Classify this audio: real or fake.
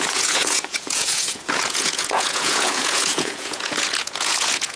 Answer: fake